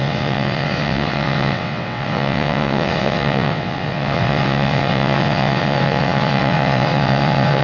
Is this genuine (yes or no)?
no